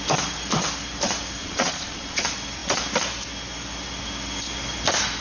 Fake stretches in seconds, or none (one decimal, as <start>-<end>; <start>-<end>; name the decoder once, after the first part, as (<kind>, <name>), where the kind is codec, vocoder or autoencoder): 1.4-2.2 (vocoder, Vocos)